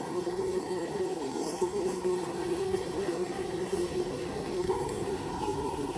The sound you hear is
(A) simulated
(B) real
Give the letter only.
A